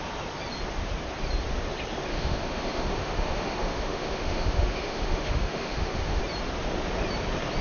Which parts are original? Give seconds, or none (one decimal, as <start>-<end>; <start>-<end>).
0.0-2.1; 6.2-7.6